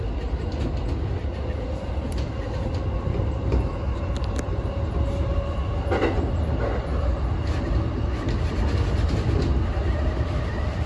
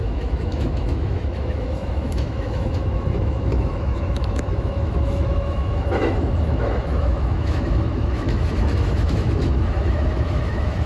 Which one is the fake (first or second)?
second